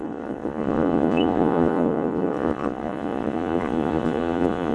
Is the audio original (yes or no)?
no